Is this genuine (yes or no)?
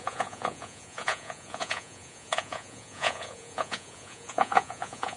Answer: no